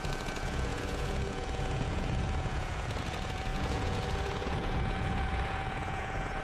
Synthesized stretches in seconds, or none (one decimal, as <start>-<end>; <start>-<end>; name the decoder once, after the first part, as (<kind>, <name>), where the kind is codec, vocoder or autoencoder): 0.0-6.4 (vocoder, Vocos)